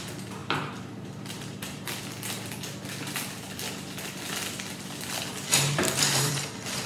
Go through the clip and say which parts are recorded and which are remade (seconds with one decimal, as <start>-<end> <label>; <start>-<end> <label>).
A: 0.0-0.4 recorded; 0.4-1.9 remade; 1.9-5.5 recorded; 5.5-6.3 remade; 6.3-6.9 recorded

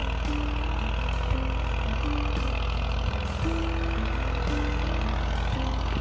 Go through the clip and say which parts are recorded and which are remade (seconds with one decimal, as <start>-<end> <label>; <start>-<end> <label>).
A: 0.0-6.0 recorded

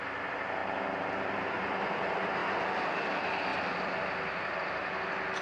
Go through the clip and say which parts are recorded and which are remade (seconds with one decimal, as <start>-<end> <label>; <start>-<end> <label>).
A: 0.0-5.4 recorded

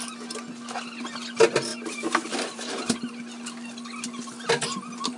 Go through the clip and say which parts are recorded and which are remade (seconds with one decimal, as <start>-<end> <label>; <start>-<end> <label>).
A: 0.0-1.7 recorded; 1.7-3.1 remade; 3.1-5.2 recorded

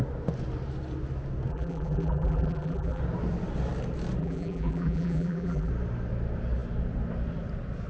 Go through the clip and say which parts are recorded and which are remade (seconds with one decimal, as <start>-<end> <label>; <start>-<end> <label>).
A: 0.0-1.5 recorded; 1.5-3.0 remade; 3.0-4.2 recorded; 4.2-5.7 remade; 5.7-7.9 recorded

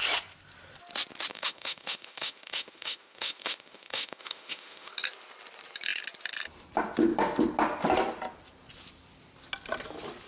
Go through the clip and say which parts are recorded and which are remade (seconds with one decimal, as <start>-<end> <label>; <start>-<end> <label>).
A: 0.0-1.3 recorded; 1.3-4.9 remade; 4.9-10.3 recorded

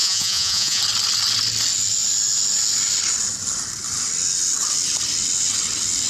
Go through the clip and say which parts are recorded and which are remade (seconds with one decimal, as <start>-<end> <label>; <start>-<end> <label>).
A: 0.0-0.8 remade; 0.8-6.1 recorded

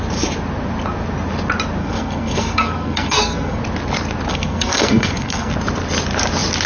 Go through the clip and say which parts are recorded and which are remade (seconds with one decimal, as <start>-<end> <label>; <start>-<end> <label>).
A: 0.0-1.8 recorded; 1.8-3.6 remade; 3.6-4.3 recorded; 4.3-5.5 remade; 5.5-6.7 recorded